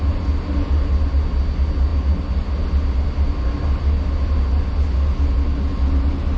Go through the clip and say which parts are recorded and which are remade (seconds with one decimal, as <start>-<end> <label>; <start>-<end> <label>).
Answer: 0.0-6.4 recorded